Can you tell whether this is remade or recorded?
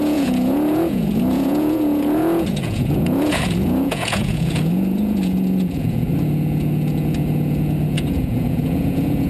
remade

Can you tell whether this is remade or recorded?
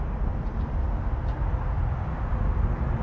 remade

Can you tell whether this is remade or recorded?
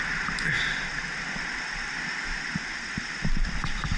recorded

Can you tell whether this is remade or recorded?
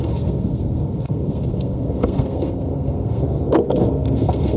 remade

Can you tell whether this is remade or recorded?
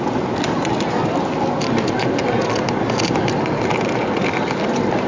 recorded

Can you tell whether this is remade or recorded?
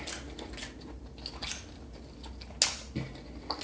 recorded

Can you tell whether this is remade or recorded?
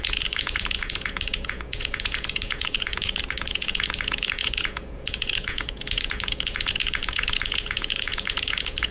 remade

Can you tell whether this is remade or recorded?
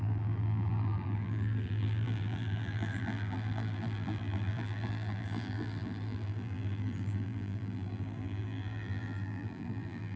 remade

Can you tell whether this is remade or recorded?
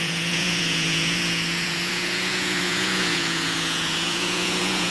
remade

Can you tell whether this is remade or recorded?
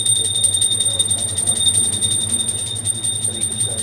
remade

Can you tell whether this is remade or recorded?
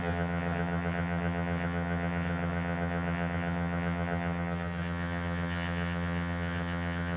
remade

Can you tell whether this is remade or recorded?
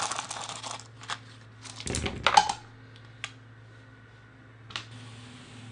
recorded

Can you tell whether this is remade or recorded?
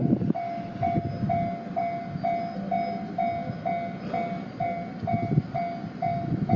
recorded